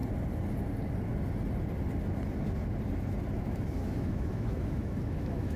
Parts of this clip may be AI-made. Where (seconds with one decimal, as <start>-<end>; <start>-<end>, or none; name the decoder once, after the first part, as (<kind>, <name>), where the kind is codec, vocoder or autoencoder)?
3.4-5.6 (autoencoder, DAC-VAE)